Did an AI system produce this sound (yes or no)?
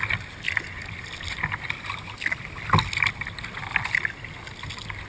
no